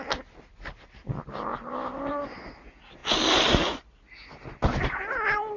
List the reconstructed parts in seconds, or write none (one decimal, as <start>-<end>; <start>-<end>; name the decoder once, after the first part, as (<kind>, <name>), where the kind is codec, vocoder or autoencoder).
none